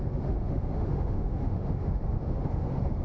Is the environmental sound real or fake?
fake